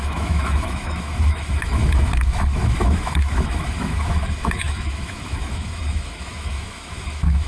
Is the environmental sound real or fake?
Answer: fake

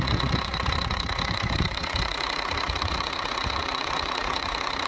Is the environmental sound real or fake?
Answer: fake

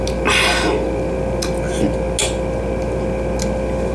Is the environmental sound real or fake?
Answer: real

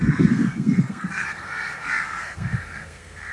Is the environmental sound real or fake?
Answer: fake